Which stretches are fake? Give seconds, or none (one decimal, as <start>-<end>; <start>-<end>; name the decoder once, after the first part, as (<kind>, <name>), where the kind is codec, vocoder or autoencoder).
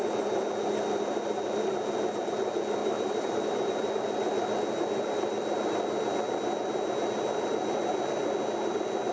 2.8-3.9 (vocoder, BigVGAN v2)